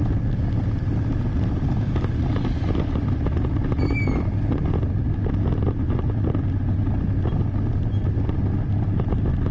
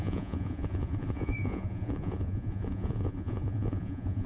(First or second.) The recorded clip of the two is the first